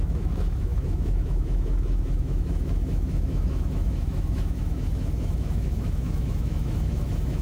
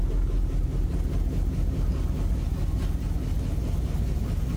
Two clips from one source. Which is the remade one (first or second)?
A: first